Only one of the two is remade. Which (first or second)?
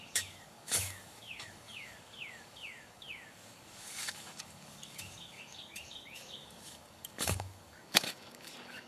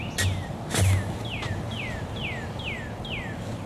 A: first